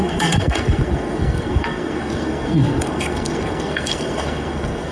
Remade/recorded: remade